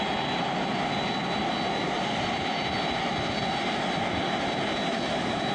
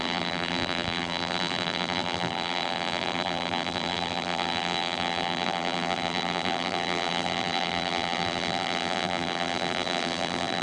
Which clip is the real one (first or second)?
first